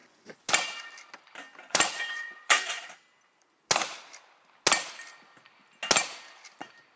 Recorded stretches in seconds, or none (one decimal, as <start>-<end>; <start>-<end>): 0.5-1.6; 2.8-7.0